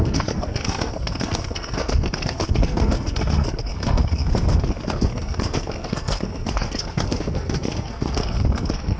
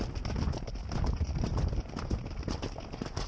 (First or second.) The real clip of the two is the second